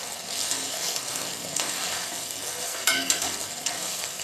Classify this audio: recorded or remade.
remade